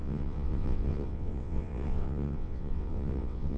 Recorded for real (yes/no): no